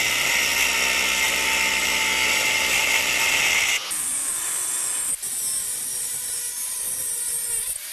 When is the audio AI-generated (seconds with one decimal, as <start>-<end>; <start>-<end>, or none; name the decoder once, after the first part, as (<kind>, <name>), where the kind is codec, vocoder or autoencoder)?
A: none